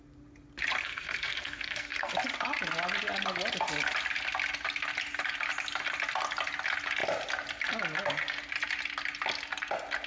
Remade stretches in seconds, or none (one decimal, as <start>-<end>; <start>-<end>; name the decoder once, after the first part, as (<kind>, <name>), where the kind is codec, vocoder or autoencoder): 0.8-2.1 (codec, SNAC)